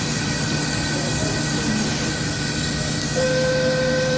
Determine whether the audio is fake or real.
fake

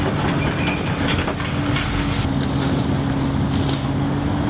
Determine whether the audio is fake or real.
real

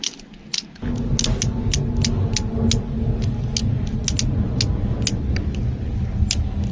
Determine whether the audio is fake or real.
real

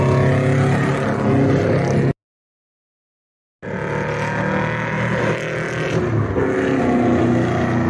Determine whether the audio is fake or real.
real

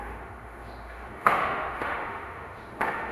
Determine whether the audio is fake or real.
fake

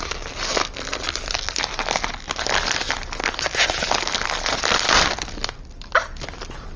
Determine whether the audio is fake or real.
real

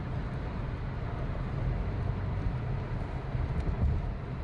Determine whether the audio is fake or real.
real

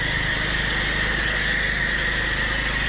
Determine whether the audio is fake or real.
real